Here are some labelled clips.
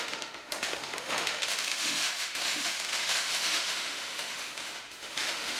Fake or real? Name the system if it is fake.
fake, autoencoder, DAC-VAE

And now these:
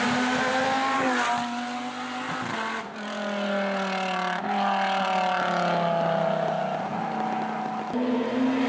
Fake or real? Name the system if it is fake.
real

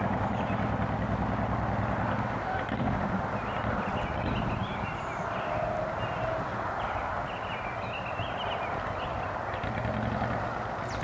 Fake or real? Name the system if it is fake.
real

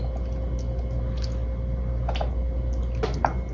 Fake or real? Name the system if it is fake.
real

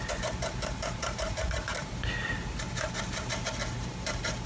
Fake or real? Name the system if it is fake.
fake, vocoder, BigVGAN v2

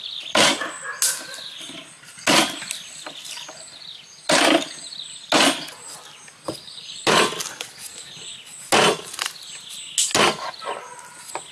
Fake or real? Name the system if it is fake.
real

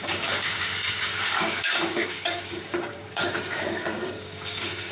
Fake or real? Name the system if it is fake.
fake, codec, DAC